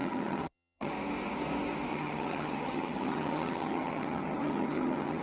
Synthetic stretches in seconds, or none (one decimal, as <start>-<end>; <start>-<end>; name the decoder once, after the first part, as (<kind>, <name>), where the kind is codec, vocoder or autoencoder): 0.0-0.9 (vocoder, HiFi-GAN); 1.9-5.2